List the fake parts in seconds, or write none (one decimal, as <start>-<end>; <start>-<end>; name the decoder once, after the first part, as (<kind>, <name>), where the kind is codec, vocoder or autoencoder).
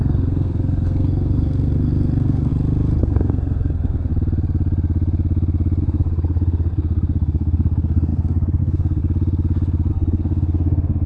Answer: 0.0-2.5 (codec, SNAC); 3.0-4.1; 5.8-9.0; 9.9-11.1